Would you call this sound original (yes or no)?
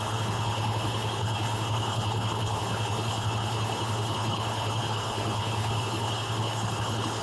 no